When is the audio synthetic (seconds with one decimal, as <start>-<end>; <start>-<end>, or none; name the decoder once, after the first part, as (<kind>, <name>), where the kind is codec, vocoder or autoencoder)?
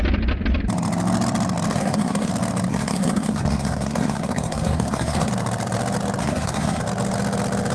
1.7-2.3 (codec, SNAC); 2.7-5.3; 6.2-6.8